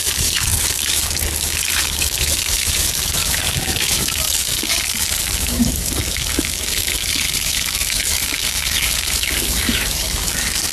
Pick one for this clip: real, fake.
fake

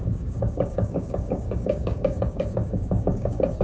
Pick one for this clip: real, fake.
fake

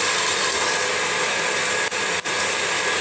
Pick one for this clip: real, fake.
real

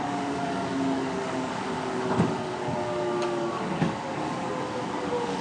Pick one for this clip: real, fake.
fake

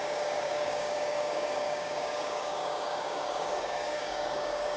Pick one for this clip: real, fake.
fake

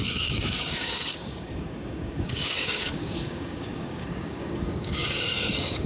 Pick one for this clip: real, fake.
fake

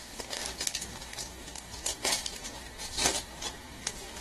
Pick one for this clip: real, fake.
fake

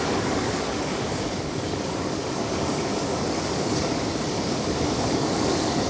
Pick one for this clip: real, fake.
fake